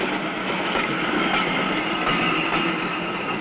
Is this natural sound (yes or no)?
yes